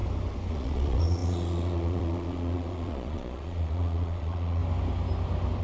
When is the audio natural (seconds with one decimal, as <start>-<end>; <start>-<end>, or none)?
0.0-0.5; 4.6-5.6